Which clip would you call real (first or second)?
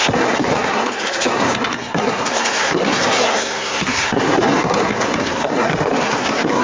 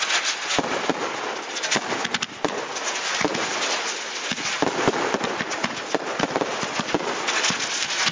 second